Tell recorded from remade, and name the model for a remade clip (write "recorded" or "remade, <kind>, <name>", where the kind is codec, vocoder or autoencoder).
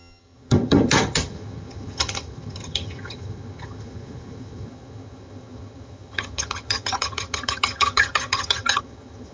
remade, vocoder, HiFi-GAN